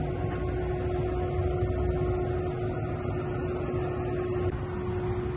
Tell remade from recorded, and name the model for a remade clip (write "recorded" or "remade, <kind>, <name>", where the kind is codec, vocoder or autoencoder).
recorded